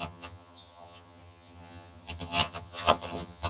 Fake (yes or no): yes